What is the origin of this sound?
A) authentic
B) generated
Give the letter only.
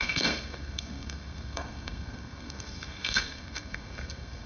B